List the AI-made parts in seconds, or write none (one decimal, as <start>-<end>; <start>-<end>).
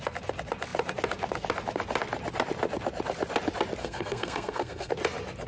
3.8-4.9